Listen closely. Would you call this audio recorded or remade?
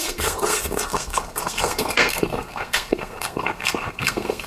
remade